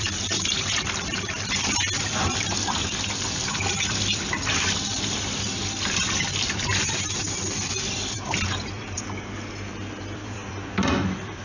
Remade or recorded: remade